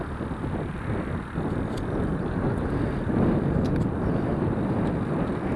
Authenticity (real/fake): real